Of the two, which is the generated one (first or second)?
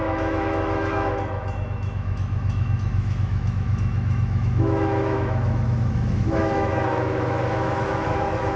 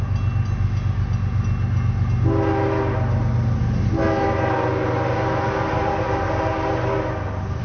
first